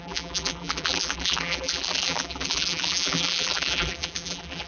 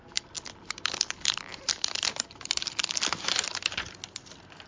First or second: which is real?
second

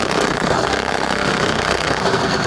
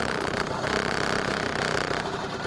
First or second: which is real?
second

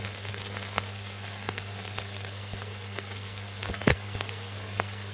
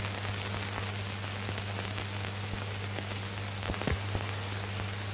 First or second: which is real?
second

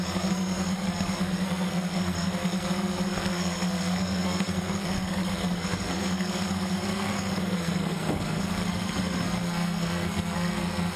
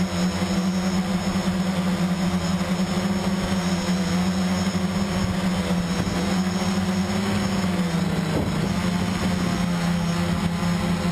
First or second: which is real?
second